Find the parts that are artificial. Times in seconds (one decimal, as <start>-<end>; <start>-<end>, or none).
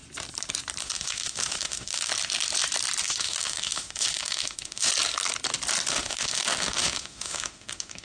0.8-2.1; 3.0-4.9; 5.9-8.0